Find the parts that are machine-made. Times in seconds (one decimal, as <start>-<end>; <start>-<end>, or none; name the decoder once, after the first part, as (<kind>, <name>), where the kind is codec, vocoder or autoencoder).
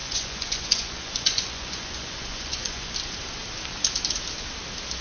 0.0-2.9 (vocoder, Vocos)